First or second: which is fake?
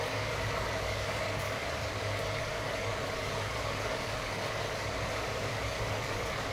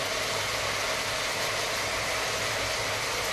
first